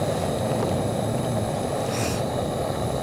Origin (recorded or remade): recorded